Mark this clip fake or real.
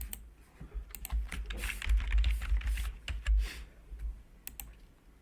real